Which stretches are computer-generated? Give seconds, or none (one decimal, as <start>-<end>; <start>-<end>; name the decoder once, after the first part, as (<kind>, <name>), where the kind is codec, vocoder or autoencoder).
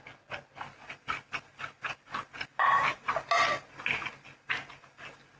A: 2.6-3.1 (vocoder, BigVGAN v2)